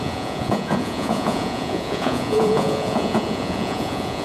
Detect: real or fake fake